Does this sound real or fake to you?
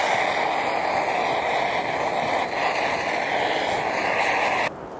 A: real